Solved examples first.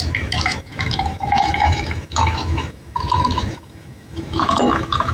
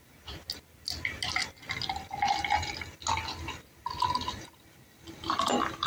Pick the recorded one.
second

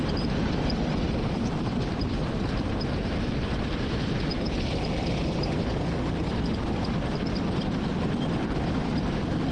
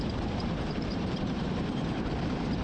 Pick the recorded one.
first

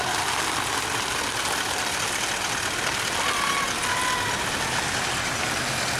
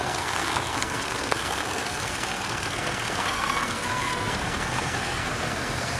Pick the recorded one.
first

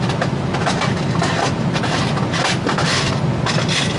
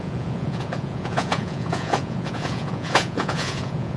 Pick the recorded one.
first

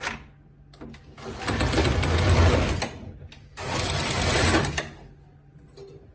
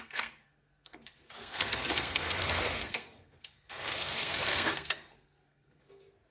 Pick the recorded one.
first